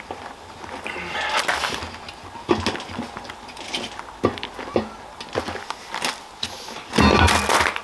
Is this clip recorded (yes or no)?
yes